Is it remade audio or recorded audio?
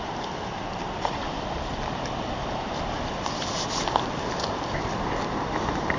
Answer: recorded